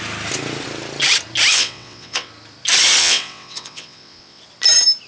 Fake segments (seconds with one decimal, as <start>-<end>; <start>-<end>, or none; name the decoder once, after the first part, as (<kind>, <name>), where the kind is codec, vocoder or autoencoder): 1.5-2.3 (vocoder, WaveNeXt); 3.0-4.4